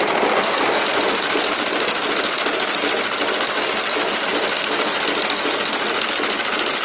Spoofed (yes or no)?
no